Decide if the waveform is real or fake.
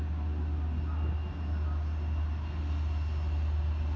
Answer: real